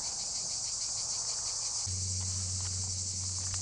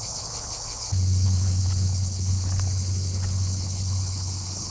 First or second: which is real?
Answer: first